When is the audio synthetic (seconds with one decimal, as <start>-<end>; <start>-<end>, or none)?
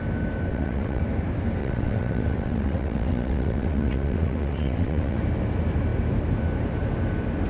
0.5-1.0; 1.6-5.2